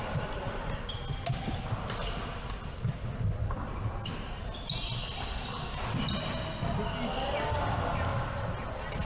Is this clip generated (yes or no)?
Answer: no